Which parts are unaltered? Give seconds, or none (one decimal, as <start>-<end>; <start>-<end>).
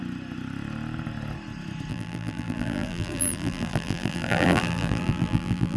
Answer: 0.0-1.9